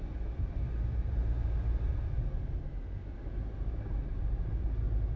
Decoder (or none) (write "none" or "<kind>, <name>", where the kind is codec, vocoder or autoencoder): none